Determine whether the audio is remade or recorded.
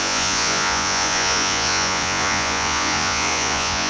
remade